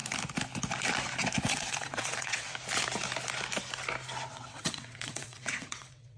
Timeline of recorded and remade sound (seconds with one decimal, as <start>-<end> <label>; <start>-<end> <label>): 0.0-1.4 recorded; 1.4-2.5 remade; 2.5-4.3 recorded; 4.3-6.2 remade